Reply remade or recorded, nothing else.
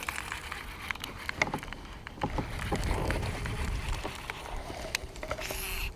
recorded